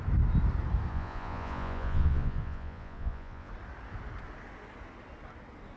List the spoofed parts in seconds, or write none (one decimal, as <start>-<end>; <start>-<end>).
0.9-3.5